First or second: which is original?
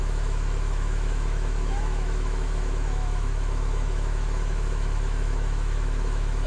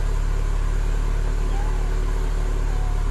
second